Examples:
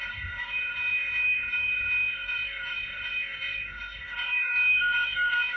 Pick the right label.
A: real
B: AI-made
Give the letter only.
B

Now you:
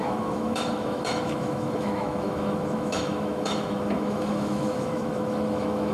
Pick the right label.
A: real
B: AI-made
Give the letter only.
B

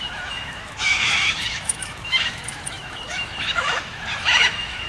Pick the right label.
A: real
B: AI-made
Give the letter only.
B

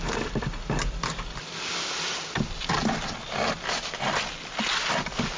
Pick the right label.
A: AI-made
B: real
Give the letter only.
B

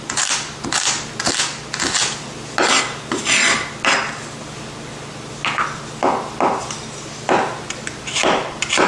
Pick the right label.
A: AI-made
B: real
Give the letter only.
B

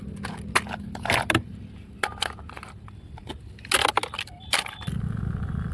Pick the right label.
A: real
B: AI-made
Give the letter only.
A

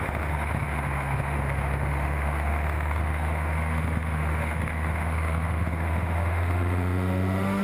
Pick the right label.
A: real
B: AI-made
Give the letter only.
B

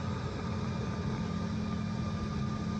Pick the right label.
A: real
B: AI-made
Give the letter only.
A